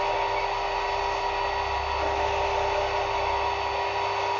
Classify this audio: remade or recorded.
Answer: recorded